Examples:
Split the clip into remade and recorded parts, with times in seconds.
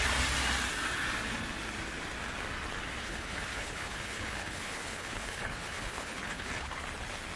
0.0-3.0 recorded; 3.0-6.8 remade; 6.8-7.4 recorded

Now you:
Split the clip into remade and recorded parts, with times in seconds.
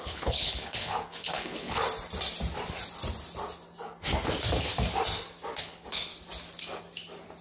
0.0-1.8 remade; 1.8-5.6 recorded; 5.6-6.1 remade; 6.1-7.4 recorded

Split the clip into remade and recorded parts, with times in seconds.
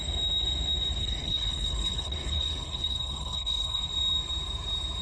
0.0-1.0 recorded; 1.0-3.9 remade; 3.9-5.0 recorded